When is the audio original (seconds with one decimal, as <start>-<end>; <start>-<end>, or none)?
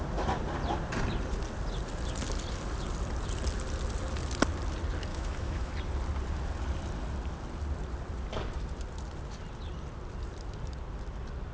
0.0-5.1; 5.7-11.5